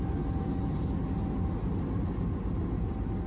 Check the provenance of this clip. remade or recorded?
recorded